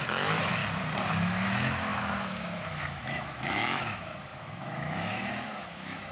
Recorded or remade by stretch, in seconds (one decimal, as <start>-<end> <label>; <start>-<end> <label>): 0.0-0.6 remade; 0.6-1.2 recorded; 1.2-6.1 remade